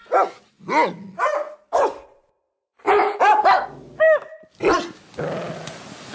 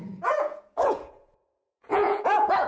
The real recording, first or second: first